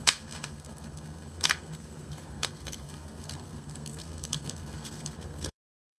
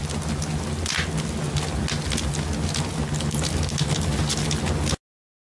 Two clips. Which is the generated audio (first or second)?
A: first